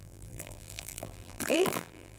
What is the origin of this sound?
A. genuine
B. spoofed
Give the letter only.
B